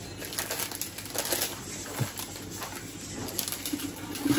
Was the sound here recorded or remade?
recorded